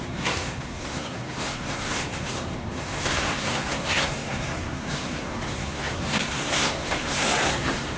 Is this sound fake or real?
fake